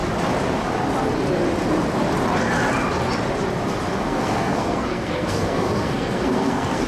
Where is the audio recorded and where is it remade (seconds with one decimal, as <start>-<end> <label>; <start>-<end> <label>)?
0.0-3.9 recorded; 3.9-6.9 remade